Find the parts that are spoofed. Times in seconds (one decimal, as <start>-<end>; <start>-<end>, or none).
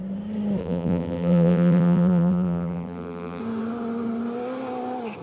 0.6-3.4